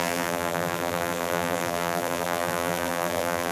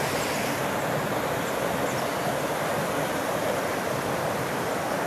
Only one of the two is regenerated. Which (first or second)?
first